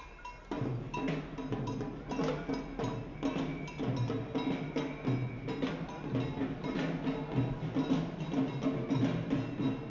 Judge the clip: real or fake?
real